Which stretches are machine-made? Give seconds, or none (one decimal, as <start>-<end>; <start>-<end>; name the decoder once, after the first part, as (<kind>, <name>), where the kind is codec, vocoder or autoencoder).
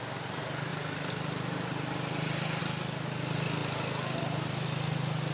none